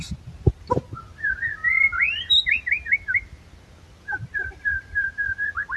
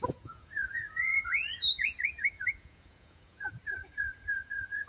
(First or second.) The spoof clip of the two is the second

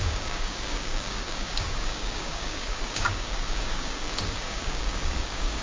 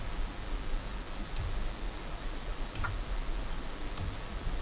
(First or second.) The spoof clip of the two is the first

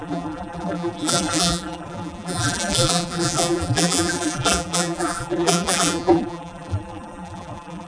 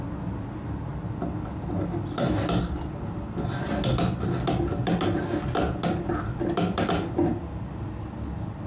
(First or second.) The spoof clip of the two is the first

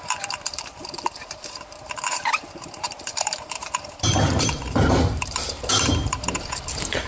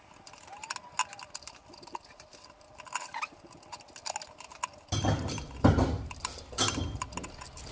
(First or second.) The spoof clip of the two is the first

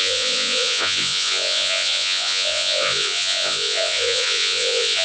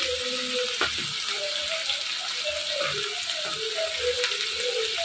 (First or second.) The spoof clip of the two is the first